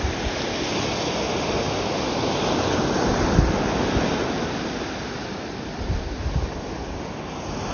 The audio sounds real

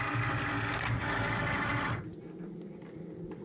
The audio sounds real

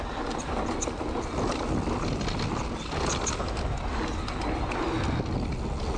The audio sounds real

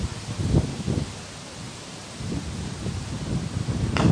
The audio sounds real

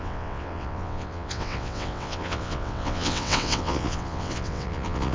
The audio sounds fake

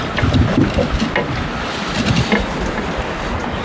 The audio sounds real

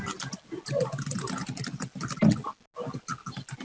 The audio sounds real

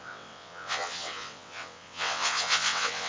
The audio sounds fake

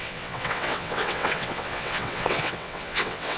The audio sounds fake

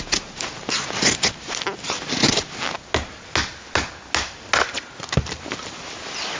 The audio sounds real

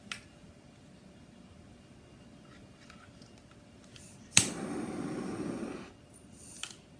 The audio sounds real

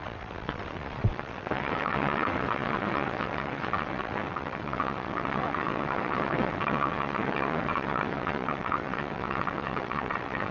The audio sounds fake